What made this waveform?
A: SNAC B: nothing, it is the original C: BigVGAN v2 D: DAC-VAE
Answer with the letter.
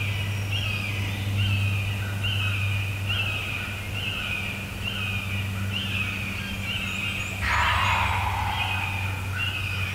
B